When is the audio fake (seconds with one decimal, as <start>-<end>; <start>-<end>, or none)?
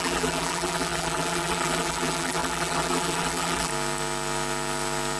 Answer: 0.0-3.7